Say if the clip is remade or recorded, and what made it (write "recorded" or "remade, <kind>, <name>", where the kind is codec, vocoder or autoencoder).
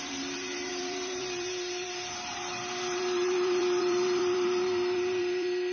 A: remade, vocoder, BigVGAN v2